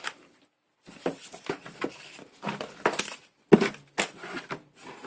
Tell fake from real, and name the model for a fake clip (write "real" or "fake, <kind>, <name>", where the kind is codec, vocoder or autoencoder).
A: real